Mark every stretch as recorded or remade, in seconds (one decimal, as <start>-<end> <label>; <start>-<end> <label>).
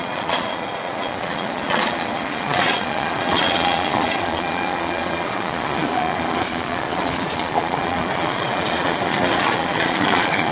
0.0-10.5 remade